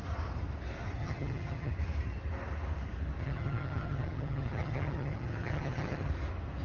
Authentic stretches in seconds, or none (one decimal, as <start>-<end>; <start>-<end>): 0.0-1.0; 1.7-3.2; 6.1-6.6